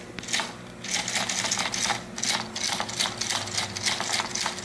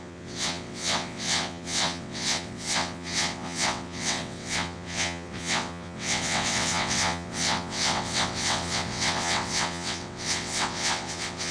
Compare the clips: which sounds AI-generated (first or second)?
second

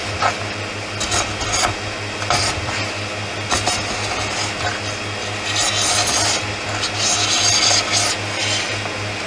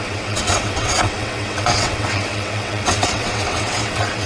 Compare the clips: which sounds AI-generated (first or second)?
second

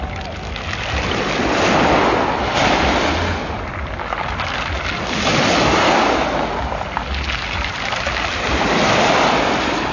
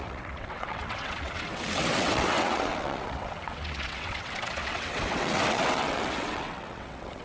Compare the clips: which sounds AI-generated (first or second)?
second